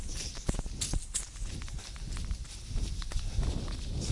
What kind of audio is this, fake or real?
real